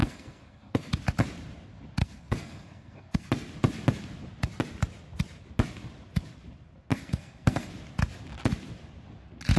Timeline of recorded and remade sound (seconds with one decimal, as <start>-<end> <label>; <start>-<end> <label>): 0.0-0.9 remade; 0.9-2.0 recorded; 2.0-3.3 remade; 3.3-6.9 recorded; 6.9-7.7 remade; 7.7-9.6 recorded